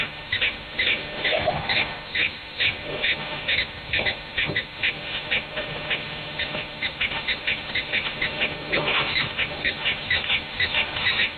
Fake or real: fake